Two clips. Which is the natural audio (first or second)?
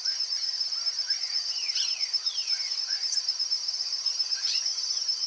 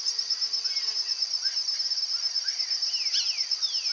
second